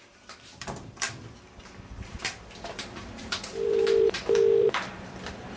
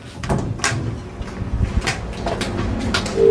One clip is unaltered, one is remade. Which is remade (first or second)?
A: first